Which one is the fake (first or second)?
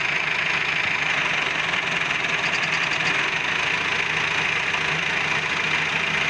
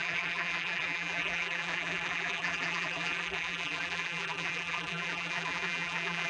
second